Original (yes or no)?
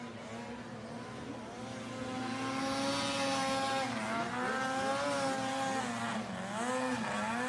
yes